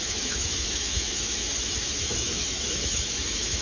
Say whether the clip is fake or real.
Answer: fake